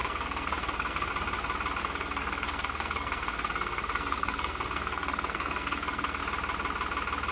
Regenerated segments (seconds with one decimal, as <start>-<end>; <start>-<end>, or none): 0.0-1.1; 1.8-6.2